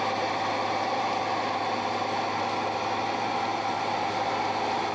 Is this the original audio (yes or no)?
yes